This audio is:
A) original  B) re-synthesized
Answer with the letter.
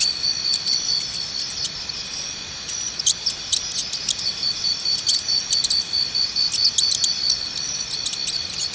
A